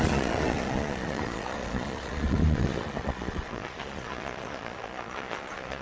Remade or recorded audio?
remade